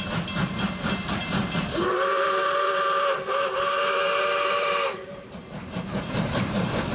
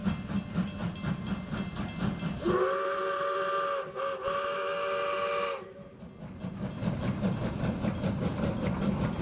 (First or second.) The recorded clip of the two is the second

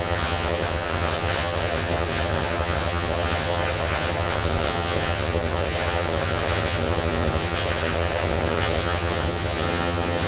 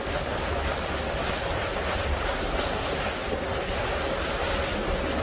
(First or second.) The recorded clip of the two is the second